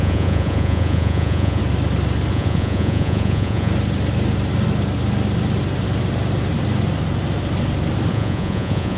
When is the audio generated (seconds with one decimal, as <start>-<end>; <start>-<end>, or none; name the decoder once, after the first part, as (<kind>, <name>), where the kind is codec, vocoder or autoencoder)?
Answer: 0.0-1.6 (vocoder, Vocos); 2.3-3.7; 8.1-9.0